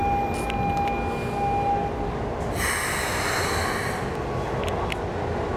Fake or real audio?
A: real